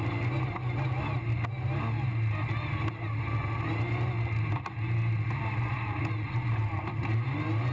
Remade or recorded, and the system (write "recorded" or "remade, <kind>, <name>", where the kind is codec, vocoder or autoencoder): recorded